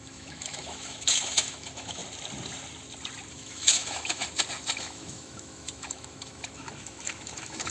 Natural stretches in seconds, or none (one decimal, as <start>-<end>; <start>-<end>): 2.0-3.3; 4.2-4.8